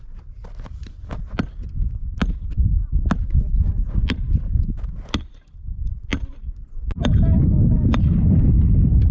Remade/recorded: recorded